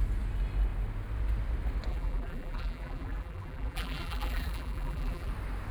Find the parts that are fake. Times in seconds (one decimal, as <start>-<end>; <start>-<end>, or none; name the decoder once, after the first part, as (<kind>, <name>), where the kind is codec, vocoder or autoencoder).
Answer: 1.9-5.3 (vocoder, BigVGAN v2)